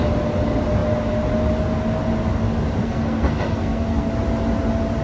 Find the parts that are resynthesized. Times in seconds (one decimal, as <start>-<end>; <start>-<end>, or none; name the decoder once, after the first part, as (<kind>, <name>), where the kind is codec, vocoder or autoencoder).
2.8-4.1 (codec, SNAC)